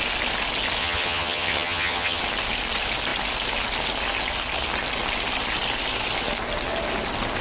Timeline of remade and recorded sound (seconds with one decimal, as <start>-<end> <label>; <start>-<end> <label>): 0.0-0.8 recorded; 0.8-2.2 remade; 2.2-7.4 recorded